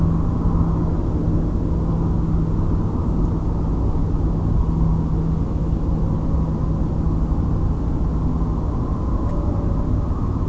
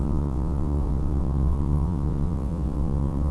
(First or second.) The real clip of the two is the first